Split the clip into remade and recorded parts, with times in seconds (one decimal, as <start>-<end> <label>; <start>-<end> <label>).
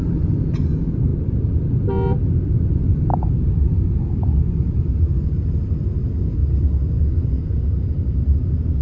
0.0-8.8 recorded